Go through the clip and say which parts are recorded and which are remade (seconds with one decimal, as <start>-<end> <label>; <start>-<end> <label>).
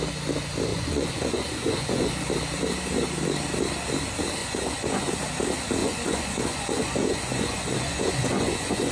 0.0-0.7 recorded; 0.7-2.1 remade; 2.1-4.4 recorded; 4.4-5.1 remade; 5.1-5.8 recorded; 5.8-8.9 remade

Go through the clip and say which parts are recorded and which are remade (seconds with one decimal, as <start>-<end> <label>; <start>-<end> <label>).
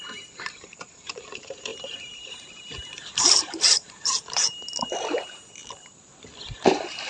0.0-6.1 remade; 6.1-7.1 recorded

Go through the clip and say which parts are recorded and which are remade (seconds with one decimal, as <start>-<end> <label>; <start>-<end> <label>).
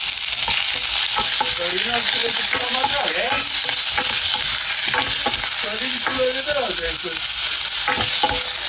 0.0-2.2 recorded; 2.2-5.1 remade; 5.1-8.7 recorded